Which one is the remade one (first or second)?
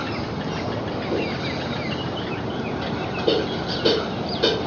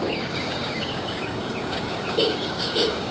second